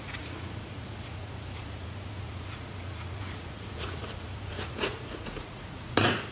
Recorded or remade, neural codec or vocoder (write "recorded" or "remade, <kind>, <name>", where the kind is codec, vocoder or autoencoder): remade, vocoder, Vocos